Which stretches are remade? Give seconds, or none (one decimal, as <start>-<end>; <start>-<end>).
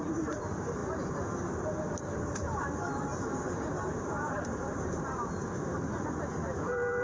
0.0-7.0